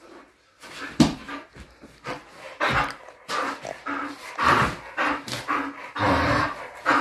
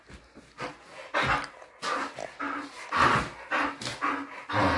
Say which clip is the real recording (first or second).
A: second